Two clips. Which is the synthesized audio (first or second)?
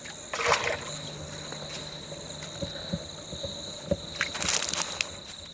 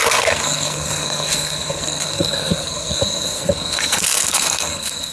second